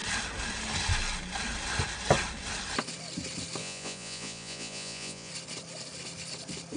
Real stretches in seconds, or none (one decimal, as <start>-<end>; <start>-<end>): 0.0-3.6; 5.3-6.8